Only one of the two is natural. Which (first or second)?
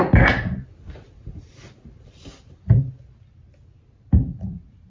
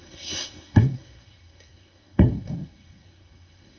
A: first